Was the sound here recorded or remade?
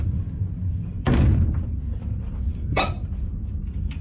remade